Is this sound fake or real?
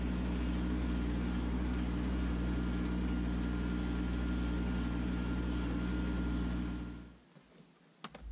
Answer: real